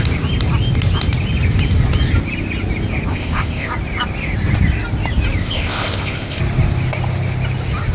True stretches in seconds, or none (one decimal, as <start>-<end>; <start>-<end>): 0.0-3.1; 3.7-5.4; 6.4-7.9